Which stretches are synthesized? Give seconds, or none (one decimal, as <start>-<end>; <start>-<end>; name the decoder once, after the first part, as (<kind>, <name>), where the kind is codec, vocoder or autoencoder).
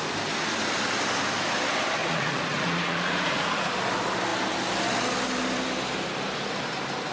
2.0-3.7 (vocoder, Vocos)